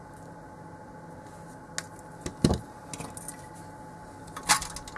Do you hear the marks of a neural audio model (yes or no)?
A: no